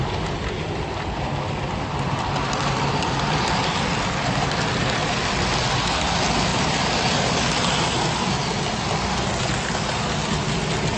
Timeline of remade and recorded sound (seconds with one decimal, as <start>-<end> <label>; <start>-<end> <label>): 0.0-11.0 recorded